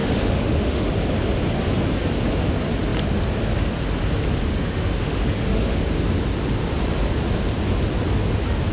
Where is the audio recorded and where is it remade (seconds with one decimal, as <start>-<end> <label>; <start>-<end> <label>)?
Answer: 0.0-0.9 remade; 0.9-4.5 recorded; 4.5-5.8 remade; 5.8-8.7 recorded